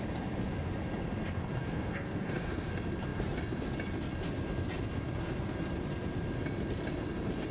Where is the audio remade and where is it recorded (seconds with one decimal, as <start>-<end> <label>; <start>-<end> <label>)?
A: 0.0-1.6 recorded; 1.6-2.7 remade; 2.7-7.5 recorded